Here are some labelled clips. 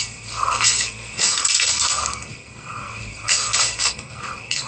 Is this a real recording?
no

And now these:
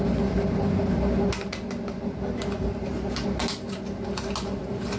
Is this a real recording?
yes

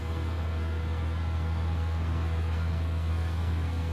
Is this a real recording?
no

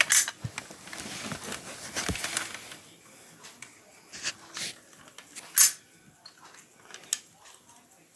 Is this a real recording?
yes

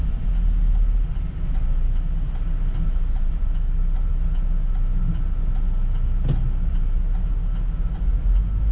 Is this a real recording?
yes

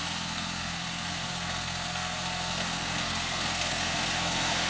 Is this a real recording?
no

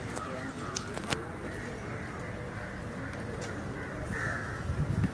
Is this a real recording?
yes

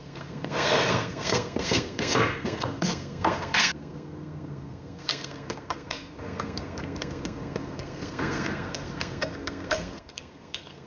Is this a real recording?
no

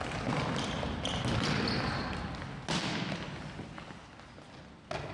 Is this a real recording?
yes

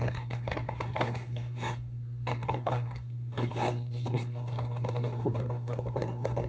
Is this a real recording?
no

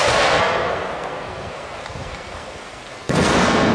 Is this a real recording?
no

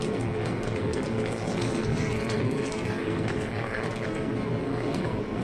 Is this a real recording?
no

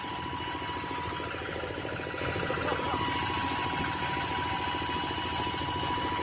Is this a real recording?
yes